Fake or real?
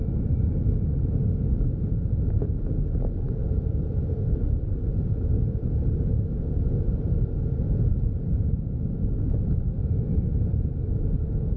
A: real